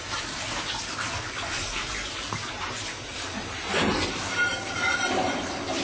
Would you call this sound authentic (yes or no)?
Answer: no